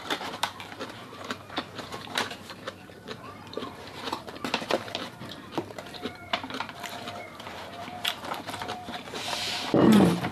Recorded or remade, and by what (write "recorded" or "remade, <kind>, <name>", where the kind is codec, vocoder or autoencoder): remade, vocoder, BigVGAN v2